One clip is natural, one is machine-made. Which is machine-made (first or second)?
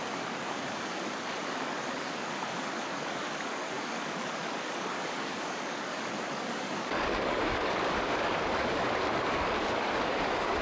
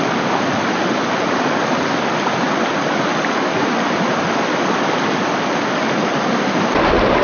first